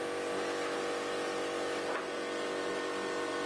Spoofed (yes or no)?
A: no